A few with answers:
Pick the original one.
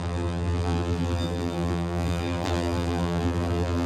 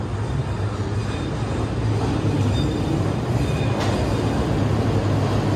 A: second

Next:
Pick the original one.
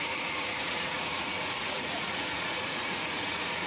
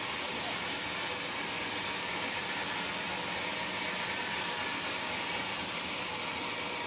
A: second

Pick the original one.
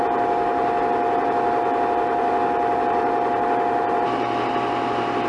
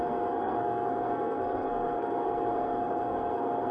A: first